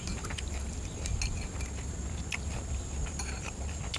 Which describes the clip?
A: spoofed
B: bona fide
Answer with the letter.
B